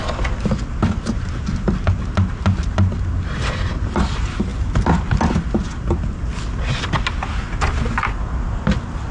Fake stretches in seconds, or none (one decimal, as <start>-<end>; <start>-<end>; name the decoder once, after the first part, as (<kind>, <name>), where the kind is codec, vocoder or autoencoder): none